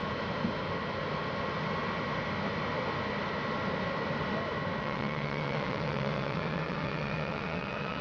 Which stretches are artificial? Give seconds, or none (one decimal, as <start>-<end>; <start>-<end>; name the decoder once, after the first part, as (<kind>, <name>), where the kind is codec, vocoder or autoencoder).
4.8-8.0 (vocoder, WaveNeXt)